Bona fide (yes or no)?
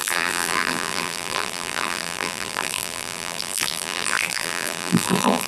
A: no